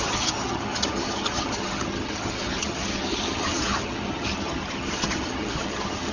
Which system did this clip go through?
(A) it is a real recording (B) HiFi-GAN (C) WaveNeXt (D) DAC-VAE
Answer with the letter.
B